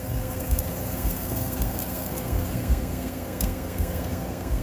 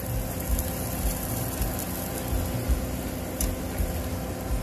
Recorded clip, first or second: second